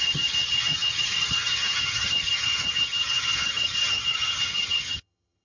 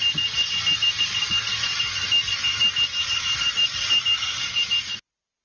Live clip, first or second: second